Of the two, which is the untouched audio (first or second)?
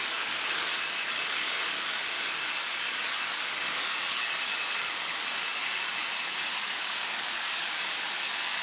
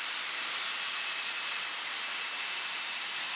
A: second